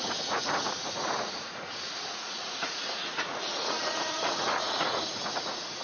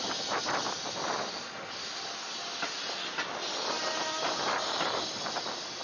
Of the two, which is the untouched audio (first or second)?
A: second